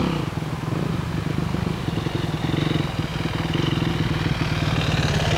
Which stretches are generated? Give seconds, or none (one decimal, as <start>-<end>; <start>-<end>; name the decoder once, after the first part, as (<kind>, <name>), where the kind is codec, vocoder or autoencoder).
none

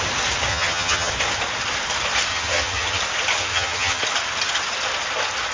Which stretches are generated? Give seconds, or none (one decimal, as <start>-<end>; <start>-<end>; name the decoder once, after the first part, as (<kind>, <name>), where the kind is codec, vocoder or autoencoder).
0.5-1.1 (vocoder, HiFi-GAN); 2.3-3.0; 3.4-4.0

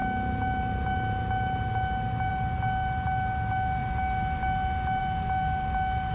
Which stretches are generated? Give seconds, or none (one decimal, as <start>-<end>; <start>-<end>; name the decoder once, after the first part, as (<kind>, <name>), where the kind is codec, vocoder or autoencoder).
none